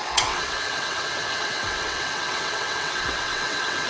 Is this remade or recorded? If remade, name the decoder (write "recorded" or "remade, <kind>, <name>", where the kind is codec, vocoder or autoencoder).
remade, vocoder, WaveNeXt